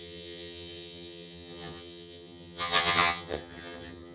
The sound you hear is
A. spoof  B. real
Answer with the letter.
A